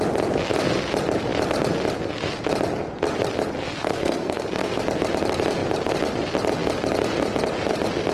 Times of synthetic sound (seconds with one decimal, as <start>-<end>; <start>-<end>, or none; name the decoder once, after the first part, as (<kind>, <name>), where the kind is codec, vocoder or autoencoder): 3.7-4.8 (codec, SNAC)